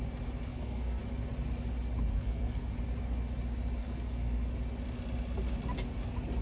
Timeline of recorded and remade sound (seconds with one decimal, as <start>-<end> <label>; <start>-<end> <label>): 0.0-0.5 recorded; 0.5-1.0 remade; 1.0-2.1 recorded; 2.1-2.7 remade; 2.7-3.8 recorded; 3.8-4.5 remade; 4.5-6.4 recorded